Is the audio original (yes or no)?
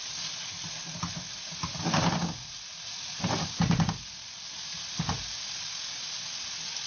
yes